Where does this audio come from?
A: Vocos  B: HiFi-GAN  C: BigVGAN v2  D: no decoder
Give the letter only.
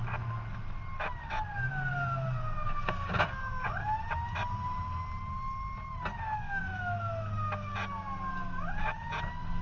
D